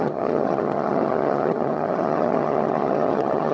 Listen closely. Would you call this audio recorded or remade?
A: remade